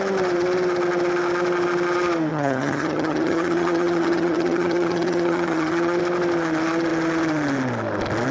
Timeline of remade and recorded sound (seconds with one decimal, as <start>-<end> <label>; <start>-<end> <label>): 0.0-2.3 recorded; 2.3-6.0 remade; 6.0-8.3 recorded